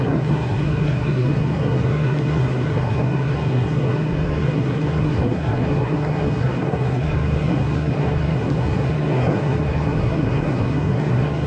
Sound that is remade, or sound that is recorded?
remade